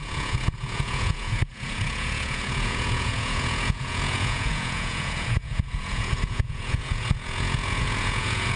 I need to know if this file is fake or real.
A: fake